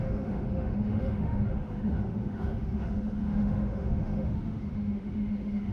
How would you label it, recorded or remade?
remade